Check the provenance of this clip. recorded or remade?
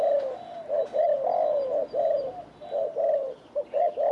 recorded